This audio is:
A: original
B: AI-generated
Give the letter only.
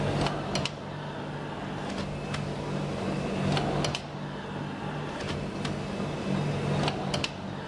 A